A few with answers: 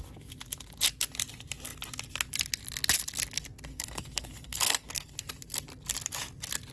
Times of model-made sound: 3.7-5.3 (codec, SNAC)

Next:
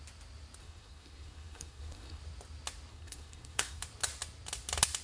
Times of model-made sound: 0.6-2.2 (codec, SNAC); 2.9-3.8

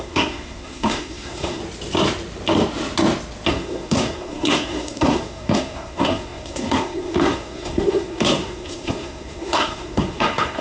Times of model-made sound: 0.0-1.6 (codec, SNAC); 3.5-10.6

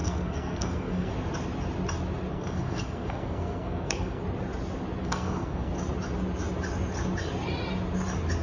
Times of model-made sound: 0.0-1.1 (codec, SNAC); 2.3-4.2; 5.0-5.7

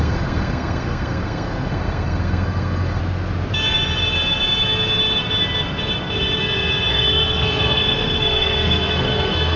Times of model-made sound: 0.0-3.0 (codec, SNAC); 6.9-9.6

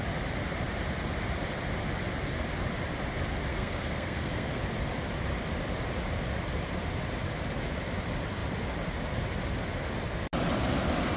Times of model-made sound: 3.5-4.6 (codec, SNAC)

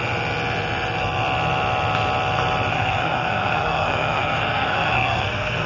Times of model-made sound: 2.7-5.7 (codec, SNAC)

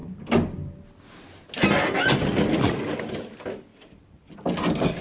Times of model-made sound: none